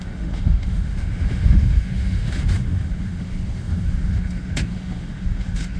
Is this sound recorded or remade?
remade